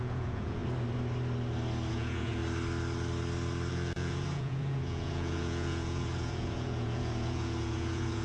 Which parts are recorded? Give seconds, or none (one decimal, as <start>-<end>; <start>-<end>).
0.6-1.9; 2.4-3.7